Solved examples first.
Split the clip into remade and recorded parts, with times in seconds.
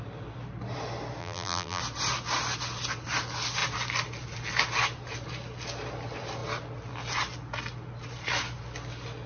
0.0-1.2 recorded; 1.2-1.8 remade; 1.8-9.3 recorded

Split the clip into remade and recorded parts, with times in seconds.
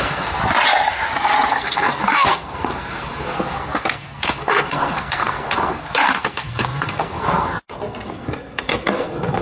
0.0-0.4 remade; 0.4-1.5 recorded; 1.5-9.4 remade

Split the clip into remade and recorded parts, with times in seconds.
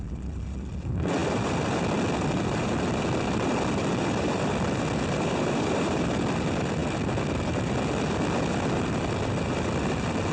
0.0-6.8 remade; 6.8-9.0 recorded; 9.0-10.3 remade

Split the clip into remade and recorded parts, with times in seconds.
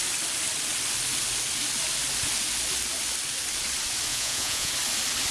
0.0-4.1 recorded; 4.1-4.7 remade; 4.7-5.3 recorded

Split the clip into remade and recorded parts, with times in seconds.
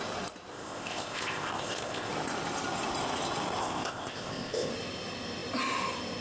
0.0-0.5 recorded; 0.5-2.1 remade; 2.1-3.6 recorded; 3.6-4.7 remade; 4.7-6.2 recorded